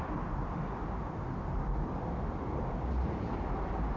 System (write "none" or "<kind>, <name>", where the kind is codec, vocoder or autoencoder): none